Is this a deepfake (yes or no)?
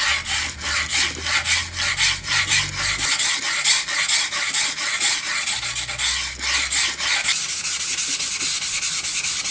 no